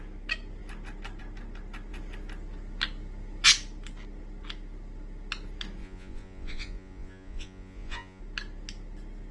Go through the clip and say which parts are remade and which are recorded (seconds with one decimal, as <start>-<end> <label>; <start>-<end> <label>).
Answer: 0.0-5.8 recorded; 5.8-8.2 remade; 8.2-9.3 recorded